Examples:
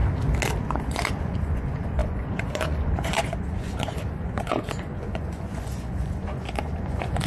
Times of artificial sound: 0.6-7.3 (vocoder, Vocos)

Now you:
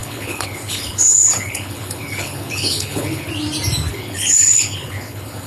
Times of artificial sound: 0.0-3.3 (codec, HILCodec); 3.9-5.5

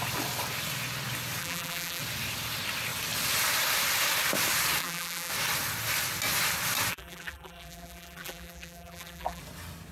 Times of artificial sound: 1.4-2.0 (vocoder, BigVGAN v2); 4.8-5.3; 6.9-9.4

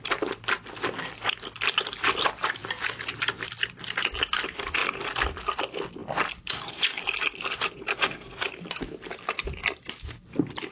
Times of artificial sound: 7.9-8.5 (codec, SNAC)

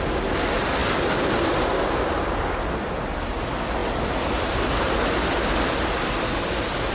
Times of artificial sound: none

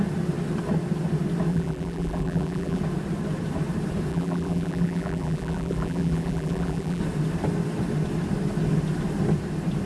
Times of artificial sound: 1.5-2.8 (vocoder, BigVGAN v2); 4.1-7.0

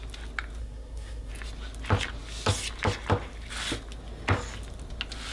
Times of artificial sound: 0.6-1.3 (codec, SNAC)

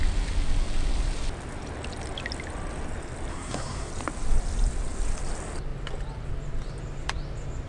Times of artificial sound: 3.3-3.9 (codec, SNAC)